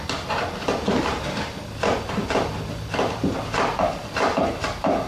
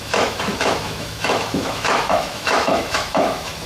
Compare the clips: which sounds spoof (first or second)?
second